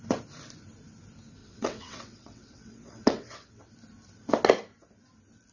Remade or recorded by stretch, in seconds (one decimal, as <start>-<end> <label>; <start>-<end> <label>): 0.0-1.4 recorded; 1.4-3.7 remade; 3.7-5.5 recorded